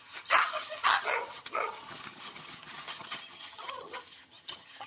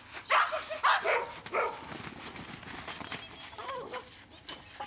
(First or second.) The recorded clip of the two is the second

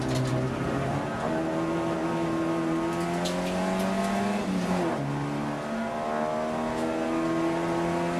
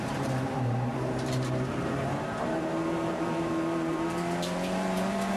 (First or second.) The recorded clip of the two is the first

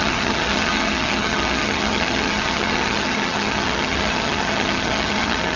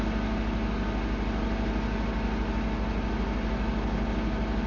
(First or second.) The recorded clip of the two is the second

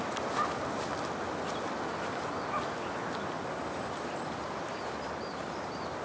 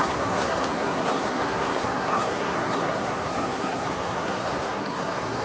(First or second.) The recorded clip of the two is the first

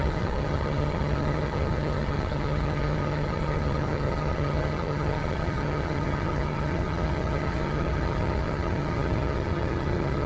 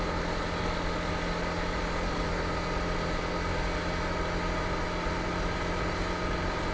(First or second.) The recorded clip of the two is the second